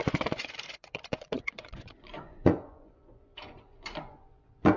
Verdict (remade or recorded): remade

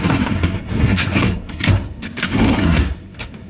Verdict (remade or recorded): remade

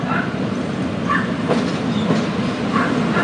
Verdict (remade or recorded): recorded